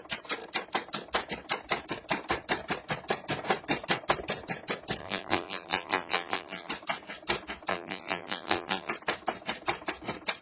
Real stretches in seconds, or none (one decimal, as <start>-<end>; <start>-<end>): 0.0-5.0; 6.7-7.7; 8.9-10.4